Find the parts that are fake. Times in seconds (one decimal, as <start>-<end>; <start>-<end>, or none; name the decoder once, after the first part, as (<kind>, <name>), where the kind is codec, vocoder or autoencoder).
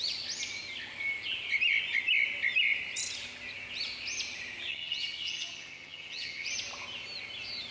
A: 4.7-6.5 (vocoder, HiFi-GAN)